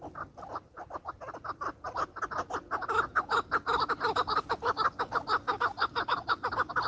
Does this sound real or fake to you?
real